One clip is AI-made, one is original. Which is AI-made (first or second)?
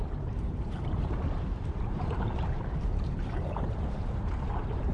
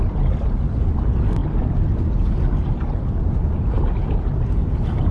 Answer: first